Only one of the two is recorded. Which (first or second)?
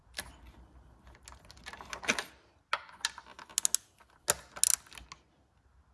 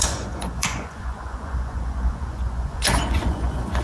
first